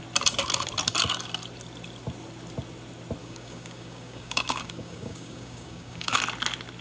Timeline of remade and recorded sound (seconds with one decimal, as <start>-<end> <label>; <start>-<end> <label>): 0.0-3.2 recorded; 3.2-6.2 remade; 6.2-6.8 recorded